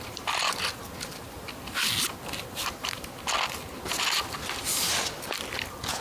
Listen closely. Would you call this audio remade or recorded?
recorded